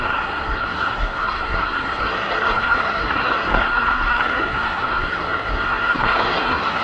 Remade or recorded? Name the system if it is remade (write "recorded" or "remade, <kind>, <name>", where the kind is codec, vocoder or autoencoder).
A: remade, codec, SNAC